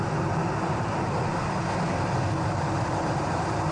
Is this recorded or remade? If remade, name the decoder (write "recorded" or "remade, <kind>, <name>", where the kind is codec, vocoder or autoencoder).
recorded